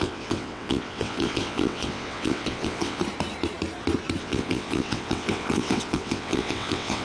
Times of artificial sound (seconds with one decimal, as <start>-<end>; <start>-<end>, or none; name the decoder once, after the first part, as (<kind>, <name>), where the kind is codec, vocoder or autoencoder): 0.0-3.0 (vocoder, WaveNeXt); 4.2-7.0